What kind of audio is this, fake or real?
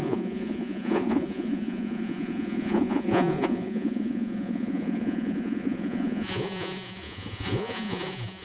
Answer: fake